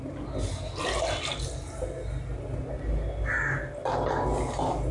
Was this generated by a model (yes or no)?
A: no